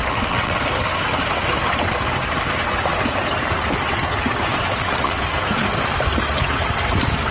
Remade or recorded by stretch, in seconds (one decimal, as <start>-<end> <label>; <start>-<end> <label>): 0.0-0.6 remade; 0.6-4.5 recorded; 4.5-5.2 remade; 5.2-7.3 recorded